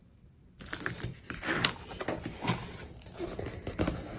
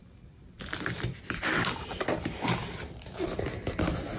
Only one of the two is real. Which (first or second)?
first